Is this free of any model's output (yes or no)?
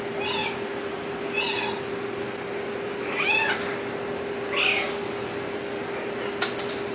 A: yes